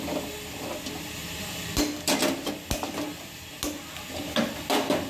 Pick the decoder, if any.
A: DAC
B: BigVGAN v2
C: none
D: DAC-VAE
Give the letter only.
C